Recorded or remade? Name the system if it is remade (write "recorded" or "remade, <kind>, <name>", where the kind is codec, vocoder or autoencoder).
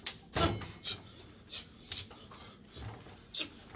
recorded